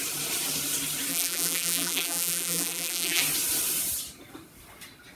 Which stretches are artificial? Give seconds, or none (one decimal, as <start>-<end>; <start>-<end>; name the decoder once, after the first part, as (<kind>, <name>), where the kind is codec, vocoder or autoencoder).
1.1-3.2 (vocoder, BigVGAN v2)